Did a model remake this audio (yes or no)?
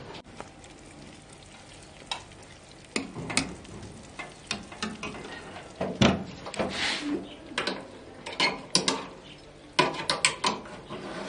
no